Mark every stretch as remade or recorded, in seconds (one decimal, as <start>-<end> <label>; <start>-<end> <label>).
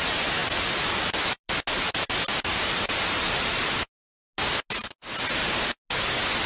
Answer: 0.0-6.5 recorded